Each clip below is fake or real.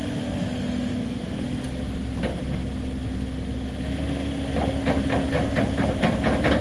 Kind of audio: real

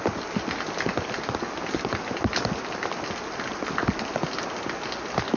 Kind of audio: real